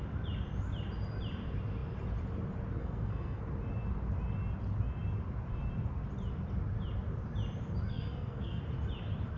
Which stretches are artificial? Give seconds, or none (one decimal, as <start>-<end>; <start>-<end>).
2.8-3.4; 7.9-8.6